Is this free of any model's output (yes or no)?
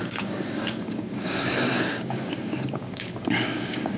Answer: no